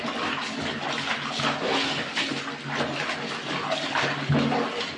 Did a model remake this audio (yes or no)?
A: no